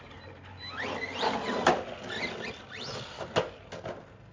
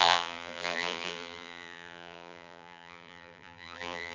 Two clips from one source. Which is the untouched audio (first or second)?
first